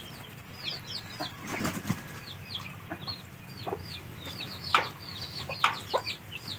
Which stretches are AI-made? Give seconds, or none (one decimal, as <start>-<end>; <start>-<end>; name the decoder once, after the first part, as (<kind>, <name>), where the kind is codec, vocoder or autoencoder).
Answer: 3.8-5.5 (autoencoder, DAC-VAE)